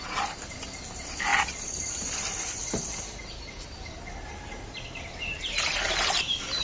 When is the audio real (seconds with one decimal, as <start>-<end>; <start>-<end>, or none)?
0.0-6.6